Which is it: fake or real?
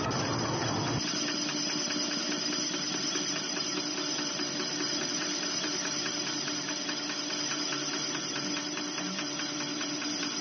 real